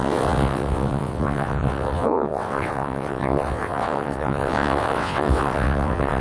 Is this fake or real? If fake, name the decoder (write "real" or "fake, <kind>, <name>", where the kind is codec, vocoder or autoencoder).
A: fake, vocoder, WaveNeXt